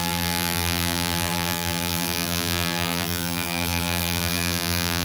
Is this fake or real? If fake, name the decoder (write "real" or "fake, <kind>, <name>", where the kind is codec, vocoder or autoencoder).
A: fake, vocoder, BigVGAN v2